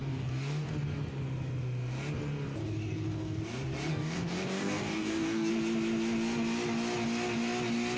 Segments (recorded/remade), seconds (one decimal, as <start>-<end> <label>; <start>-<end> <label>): 0.0-0.7 remade; 0.7-2.6 recorded; 2.6-3.4 remade; 3.4-3.9 recorded; 3.9-5.5 remade; 5.5-8.0 recorded